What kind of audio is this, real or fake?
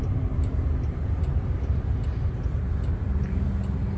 real